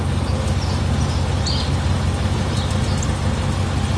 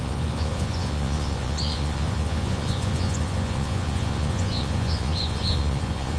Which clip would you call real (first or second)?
first